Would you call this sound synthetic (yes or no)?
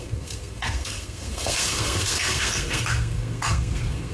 yes